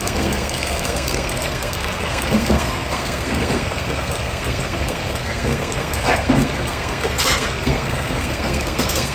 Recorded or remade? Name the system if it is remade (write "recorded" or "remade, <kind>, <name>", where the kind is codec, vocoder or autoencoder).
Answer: remade, codec, SNAC